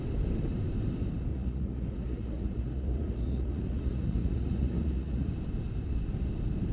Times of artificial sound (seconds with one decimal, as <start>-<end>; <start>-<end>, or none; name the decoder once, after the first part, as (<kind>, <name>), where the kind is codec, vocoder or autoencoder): 1.3-5.3 (vocoder, Vocos)